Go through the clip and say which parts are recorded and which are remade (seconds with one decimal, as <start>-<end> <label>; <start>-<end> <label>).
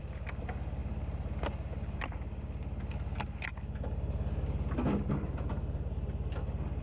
0.0-6.8 recorded